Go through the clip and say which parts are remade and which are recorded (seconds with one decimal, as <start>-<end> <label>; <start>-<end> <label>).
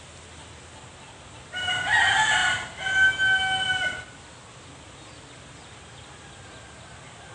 0.0-7.3 recorded